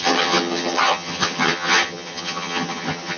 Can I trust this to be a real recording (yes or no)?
no